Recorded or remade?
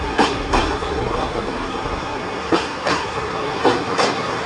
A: remade